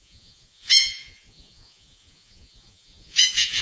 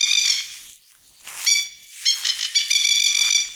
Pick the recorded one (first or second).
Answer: second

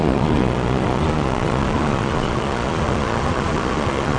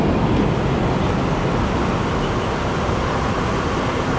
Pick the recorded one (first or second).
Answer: second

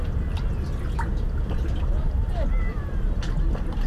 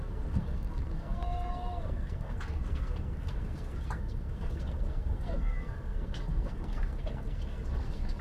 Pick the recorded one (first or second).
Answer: first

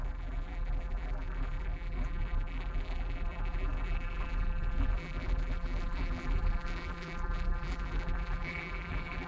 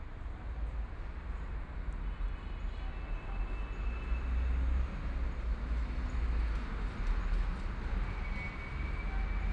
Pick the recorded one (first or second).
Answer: second